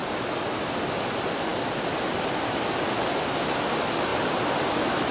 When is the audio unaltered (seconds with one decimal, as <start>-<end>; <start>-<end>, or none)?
0.8-4.1